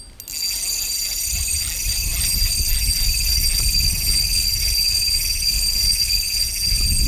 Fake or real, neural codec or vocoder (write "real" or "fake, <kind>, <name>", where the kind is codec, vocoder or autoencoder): real